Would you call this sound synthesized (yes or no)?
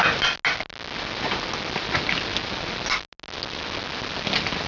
no